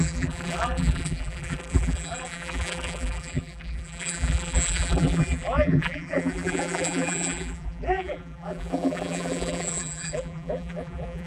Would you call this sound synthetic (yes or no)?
yes